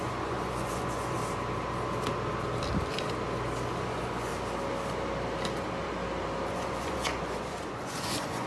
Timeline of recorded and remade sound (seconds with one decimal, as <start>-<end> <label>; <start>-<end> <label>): 0.0-1.2 remade; 1.2-3.9 recorded; 3.9-4.3 remade; 4.3-6.5 recorded; 6.5-8.5 remade